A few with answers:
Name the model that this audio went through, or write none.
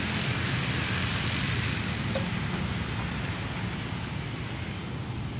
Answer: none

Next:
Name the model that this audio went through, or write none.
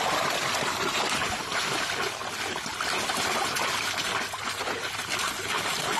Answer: none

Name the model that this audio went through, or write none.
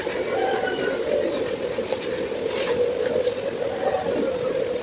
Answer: none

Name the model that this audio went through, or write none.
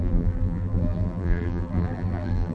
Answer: vocoder, BigVGAN v2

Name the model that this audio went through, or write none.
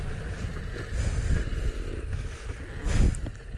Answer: none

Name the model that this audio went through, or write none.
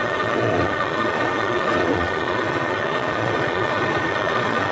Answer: vocoder, Vocos